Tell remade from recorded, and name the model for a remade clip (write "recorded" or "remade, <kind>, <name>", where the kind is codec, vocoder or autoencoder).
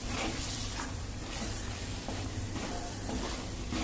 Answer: remade, vocoder, BigVGAN v2